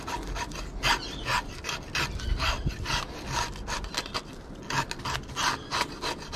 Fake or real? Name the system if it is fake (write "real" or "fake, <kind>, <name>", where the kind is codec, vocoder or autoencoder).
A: real